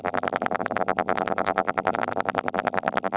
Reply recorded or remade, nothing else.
remade